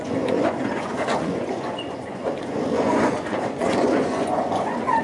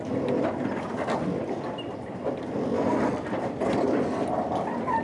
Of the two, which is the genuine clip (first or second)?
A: second